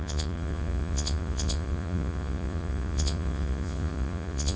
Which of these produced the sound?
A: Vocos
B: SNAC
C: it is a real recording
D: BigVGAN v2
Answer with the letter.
A